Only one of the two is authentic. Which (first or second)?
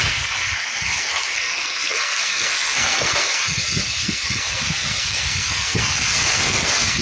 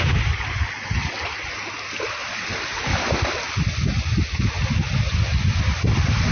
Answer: second